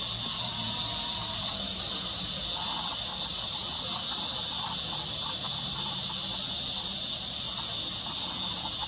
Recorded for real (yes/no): yes